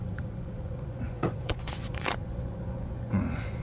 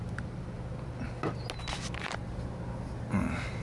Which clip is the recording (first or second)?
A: second